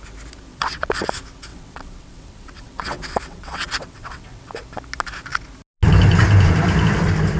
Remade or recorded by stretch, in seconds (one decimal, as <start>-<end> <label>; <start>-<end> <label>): 0.0-0.5 recorded; 0.5-1.1 remade; 1.1-1.5 recorded; 1.5-4.5 remade; 4.5-7.4 recorded